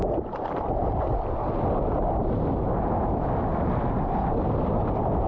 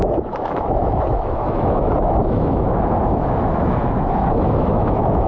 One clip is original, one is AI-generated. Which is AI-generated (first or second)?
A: second